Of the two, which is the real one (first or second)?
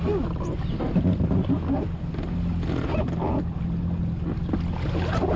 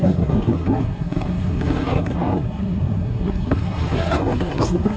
first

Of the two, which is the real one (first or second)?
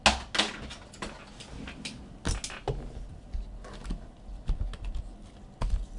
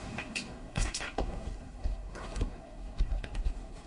first